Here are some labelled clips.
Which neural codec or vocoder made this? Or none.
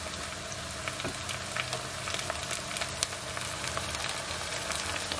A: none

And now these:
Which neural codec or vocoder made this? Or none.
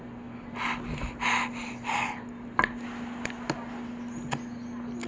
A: none